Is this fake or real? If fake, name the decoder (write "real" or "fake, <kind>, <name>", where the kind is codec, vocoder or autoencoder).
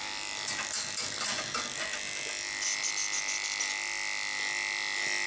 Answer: real